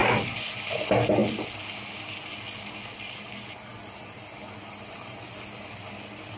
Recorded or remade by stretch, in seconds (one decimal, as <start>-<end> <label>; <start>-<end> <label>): 0.0-6.4 recorded